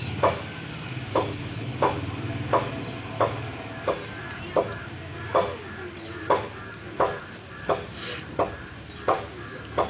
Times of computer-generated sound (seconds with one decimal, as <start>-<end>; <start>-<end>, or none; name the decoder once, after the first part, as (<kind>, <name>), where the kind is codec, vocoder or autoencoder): 1.1-1.7 (codec, HILCodec)